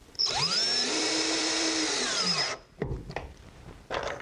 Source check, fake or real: fake